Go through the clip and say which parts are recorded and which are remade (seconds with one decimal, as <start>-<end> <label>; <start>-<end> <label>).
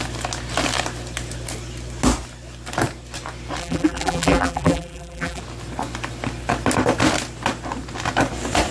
0.0-3.6 recorded; 3.6-5.4 remade; 5.4-8.7 recorded